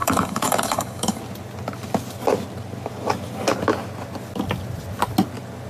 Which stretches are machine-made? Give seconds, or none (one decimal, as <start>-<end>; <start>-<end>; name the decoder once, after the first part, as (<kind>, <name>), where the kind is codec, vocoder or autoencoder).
0.0-1.2 (codec, DAC)